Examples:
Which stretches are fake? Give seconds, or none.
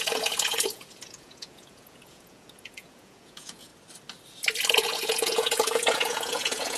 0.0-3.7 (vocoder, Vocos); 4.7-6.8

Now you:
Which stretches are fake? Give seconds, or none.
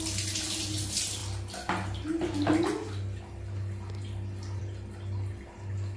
none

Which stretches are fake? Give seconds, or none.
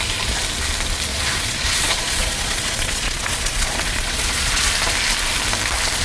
1.1-4.7 (vocoder, Vocos)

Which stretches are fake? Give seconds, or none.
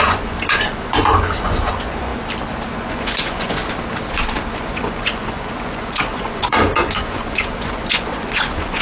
0.0-2.1 (vocoder, Vocos); 2.7-3.6; 4.5-8.8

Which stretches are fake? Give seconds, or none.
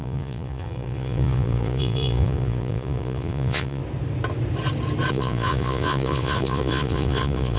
0.0-3.8 (vocoder, Vocos); 5.1-7.6